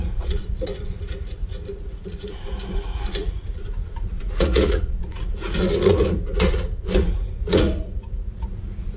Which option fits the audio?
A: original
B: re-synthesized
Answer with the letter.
B